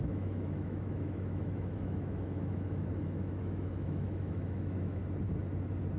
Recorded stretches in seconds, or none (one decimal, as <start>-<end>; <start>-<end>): 5.0-6.0

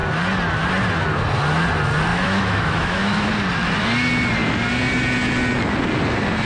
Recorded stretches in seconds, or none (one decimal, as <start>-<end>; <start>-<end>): 0.0-2.1; 3.3-6.5

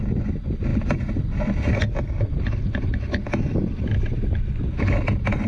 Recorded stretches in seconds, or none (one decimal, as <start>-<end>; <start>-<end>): 0.0-5.5

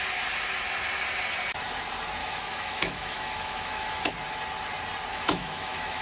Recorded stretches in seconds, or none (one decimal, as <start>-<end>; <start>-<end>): 0.0-2.2; 4.1-5.1

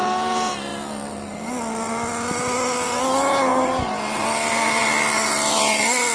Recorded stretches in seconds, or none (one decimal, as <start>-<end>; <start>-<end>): 0.0-6.1

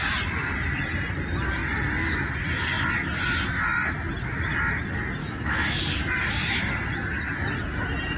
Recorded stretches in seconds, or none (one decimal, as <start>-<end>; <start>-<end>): 0.0-5.2; 5.8-8.2

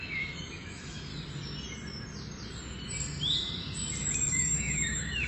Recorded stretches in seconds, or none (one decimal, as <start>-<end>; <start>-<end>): 1.1-4.3

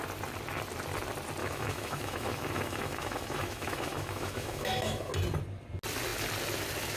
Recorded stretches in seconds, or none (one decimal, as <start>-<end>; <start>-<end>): 0.0-1.4; 5.1-7.0